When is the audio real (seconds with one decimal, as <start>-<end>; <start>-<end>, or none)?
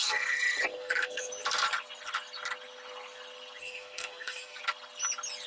0.0-0.7; 1.3-3.6; 4.6-5.5